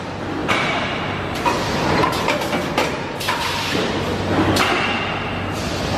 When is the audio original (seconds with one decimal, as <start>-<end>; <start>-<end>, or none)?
0.0-0.4; 4.0-6.0